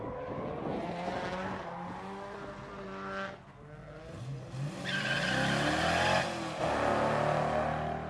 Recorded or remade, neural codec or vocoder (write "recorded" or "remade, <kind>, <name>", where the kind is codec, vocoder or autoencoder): recorded